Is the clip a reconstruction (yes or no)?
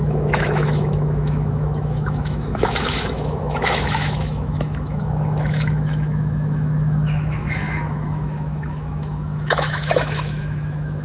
yes